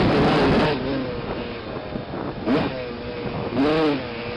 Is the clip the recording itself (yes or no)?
yes